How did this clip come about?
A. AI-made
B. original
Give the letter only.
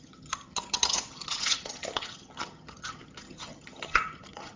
A